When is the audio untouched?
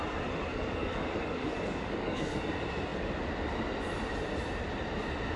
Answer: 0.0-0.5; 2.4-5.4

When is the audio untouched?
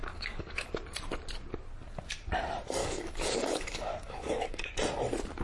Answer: 0.7-2.8; 4.7-5.4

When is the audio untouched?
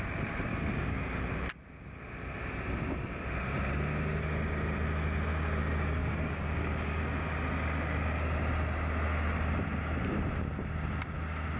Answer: 0.0-0.5; 1.2-5.6; 7.0-11.6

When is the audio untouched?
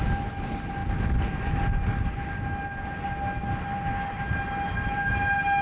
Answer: 0.0-5.6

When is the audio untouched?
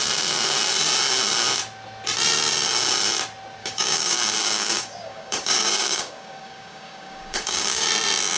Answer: 0.0-3.6; 7.9-8.4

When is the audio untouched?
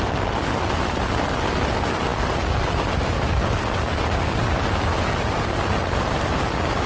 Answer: 0.0-6.9